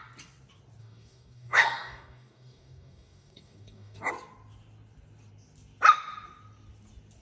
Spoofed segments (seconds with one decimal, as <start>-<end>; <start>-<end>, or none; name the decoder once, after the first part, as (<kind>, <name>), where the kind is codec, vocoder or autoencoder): 0.8-4.1 (codec, DAC)

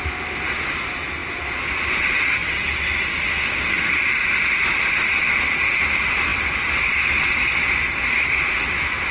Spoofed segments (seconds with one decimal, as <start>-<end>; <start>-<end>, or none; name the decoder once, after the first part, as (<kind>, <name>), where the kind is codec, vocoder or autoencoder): none

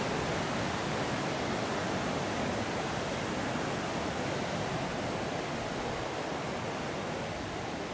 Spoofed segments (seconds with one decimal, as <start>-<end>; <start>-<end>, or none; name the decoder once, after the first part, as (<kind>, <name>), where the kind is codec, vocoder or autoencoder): none